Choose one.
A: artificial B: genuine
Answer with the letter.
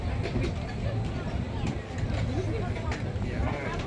B